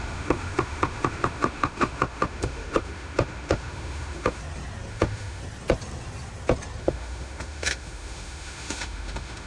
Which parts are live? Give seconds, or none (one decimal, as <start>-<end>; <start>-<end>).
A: 4.4-4.9; 5.4-6.8